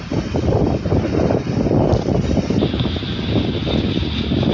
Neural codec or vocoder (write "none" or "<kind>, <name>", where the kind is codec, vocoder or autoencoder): none